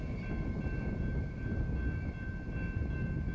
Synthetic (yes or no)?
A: no